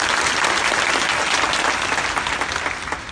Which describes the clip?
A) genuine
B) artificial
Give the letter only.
A